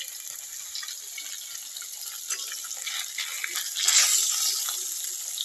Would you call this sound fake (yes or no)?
no